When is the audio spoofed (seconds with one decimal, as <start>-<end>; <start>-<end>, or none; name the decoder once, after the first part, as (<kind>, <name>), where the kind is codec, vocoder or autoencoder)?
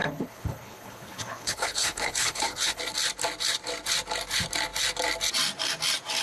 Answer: 0.0-2.8 (codec, HILCodec)